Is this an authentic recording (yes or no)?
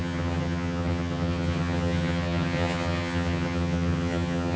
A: no